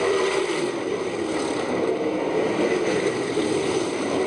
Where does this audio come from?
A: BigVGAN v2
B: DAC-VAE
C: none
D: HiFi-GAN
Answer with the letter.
A